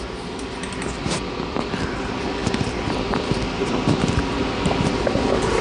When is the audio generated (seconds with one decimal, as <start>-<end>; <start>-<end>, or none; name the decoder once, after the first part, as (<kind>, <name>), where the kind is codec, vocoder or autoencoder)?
none